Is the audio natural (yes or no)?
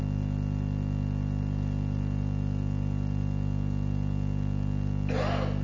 yes